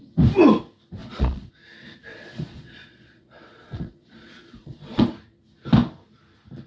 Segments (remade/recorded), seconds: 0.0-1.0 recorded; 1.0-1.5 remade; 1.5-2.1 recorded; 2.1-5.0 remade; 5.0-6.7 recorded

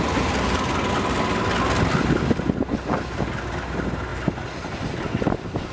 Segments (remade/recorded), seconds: 0.0-5.7 recorded

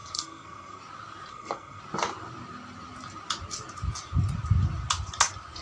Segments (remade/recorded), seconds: 0.0-0.8 remade; 0.8-1.3 recorded; 1.3-1.8 remade; 1.8-5.6 recorded

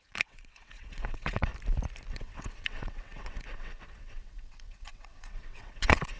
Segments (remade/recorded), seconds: 0.0-1.5 remade; 1.5-2.1 recorded; 2.1-6.2 remade